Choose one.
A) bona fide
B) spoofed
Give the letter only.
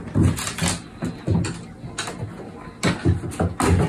A